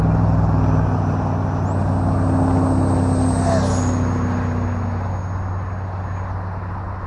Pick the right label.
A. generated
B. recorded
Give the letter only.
B